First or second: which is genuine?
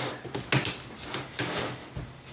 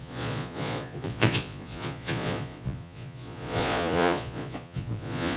first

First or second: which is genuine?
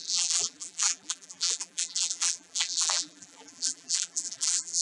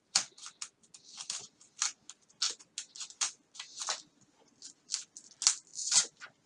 second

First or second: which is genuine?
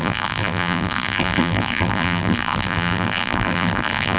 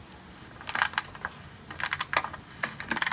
second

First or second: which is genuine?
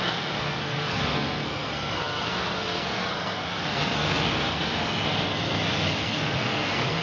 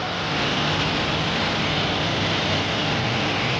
second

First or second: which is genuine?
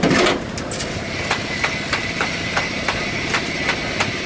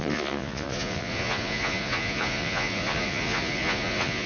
first